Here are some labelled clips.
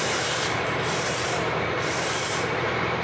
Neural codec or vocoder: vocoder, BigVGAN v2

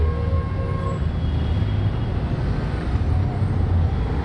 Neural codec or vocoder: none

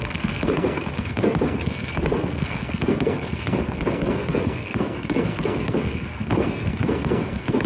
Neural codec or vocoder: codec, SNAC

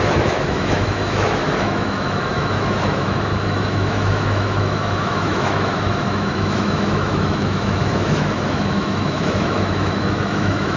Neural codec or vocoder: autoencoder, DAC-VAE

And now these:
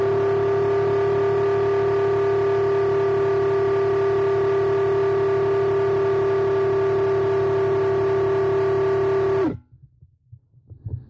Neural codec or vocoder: none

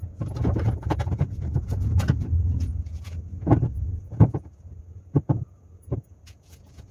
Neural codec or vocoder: vocoder, Vocos